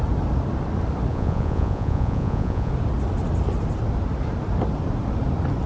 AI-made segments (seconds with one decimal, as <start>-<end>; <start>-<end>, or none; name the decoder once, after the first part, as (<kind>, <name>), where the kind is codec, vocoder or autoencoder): 1.1-2.7 (vocoder, Vocos)